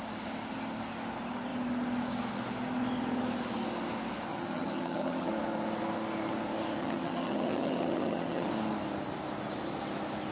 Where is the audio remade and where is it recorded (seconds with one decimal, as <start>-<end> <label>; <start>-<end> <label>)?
0.0-4.3 recorded; 4.3-5.3 remade; 5.3-6.8 recorded; 6.8-8.5 remade; 8.5-10.3 recorded